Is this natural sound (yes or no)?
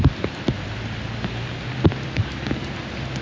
yes